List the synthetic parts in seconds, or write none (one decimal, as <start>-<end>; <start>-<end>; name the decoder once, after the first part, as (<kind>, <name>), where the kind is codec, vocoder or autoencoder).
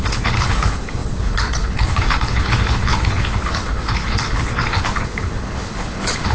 0.0-6.3 (codec, HILCodec)